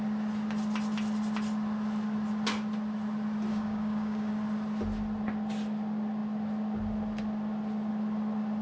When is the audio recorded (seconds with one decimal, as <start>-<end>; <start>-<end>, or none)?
0.0-3.5; 4.3-8.6